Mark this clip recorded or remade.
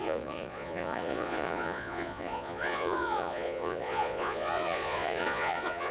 remade